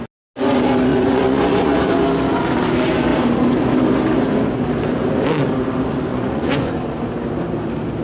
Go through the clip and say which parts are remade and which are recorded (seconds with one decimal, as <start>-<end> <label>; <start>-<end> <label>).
0.0-0.9 recorded; 0.9-1.9 remade; 1.9-6.1 recorded; 6.1-6.7 remade; 6.7-8.0 recorded